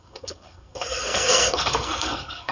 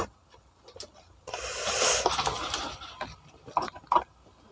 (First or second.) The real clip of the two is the second